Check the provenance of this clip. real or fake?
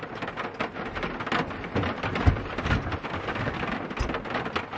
real